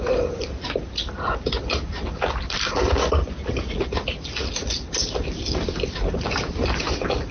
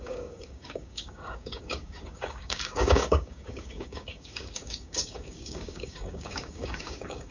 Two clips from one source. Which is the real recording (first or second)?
first